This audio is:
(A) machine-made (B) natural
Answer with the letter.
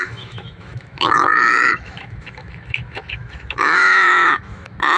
A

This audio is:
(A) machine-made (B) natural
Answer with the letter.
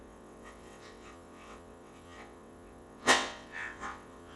A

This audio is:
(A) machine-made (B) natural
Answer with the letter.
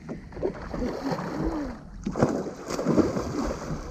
B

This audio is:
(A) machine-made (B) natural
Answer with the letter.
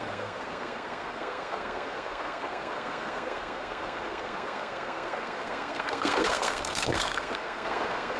A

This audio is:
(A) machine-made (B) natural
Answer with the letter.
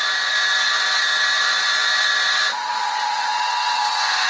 A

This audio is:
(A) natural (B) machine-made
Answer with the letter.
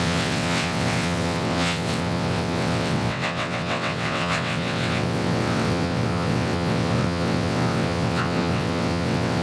B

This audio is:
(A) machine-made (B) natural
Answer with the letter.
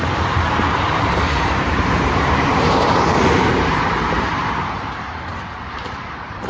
A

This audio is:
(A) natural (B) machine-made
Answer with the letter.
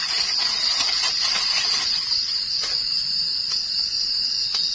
A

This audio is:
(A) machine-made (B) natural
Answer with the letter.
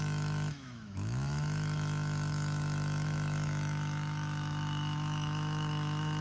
A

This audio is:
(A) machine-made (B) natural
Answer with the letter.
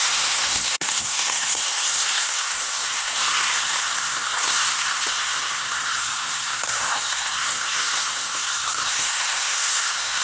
A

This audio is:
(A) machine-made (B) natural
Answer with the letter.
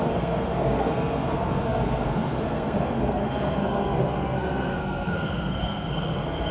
A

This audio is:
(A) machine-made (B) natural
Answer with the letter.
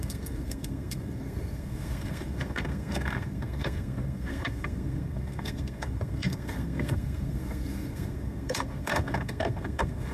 A